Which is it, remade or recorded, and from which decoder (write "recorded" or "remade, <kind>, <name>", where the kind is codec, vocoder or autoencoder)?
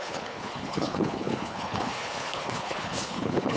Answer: remade, codec, HILCodec